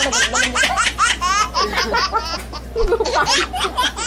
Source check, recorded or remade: recorded